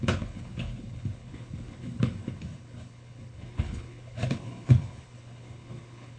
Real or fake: fake